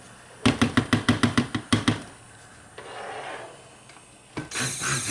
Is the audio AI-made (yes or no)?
no